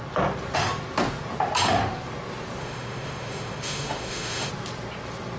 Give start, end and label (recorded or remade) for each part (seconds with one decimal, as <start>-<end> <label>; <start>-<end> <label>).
0.0-2.6 recorded; 2.6-4.5 remade; 4.5-5.4 recorded